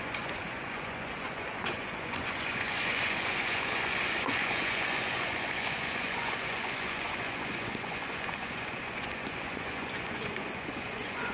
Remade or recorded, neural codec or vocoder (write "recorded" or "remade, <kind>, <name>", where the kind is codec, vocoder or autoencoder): remade, vocoder, Vocos